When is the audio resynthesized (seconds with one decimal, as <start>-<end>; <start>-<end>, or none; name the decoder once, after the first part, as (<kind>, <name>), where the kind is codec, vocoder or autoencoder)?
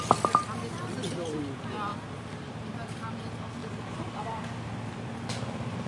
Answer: 1.9-2.6 (vocoder, BigVGAN v2)